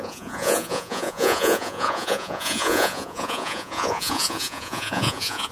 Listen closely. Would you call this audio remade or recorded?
remade